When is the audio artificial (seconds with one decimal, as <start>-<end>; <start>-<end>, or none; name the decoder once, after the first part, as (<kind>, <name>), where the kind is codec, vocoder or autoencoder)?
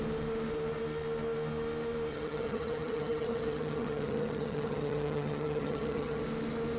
2.1-6.2 (vocoder, HiFi-GAN)